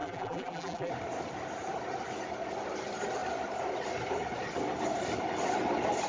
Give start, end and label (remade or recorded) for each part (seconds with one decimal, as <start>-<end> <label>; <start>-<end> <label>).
0.0-0.9 remade; 0.9-6.1 recorded